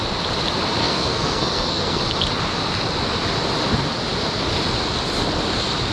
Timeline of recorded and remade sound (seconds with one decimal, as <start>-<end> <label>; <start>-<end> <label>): 0.0-0.8 recorded; 0.8-2.0 remade; 2.0-5.9 recorded